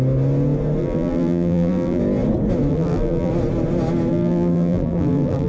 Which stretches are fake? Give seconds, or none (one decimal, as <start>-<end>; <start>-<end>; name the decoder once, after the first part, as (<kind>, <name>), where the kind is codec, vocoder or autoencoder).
0.8-2.0 (vocoder, BigVGAN v2); 2.7-3.3; 4.1-5.5